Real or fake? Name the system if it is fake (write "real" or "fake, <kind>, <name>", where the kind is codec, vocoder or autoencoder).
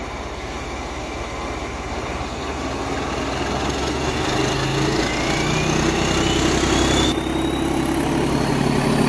real